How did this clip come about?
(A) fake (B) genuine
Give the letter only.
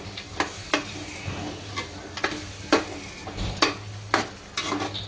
B